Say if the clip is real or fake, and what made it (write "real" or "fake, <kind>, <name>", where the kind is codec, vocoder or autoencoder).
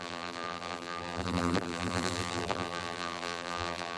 fake, vocoder, BigVGAN v2